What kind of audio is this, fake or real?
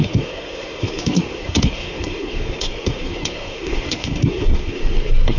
fake